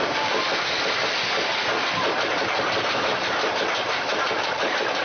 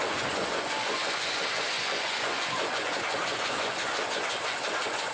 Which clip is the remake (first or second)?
second